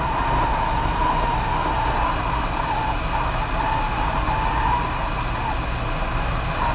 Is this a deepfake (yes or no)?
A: no